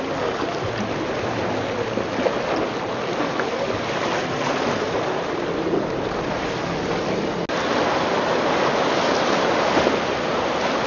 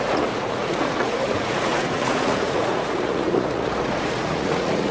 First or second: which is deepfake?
second